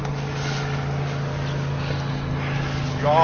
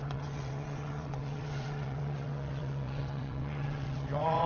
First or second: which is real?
first